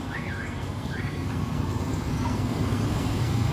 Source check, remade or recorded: remade